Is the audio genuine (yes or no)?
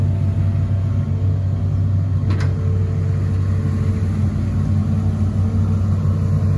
yes